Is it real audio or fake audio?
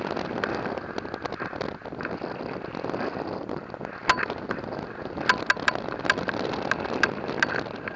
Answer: real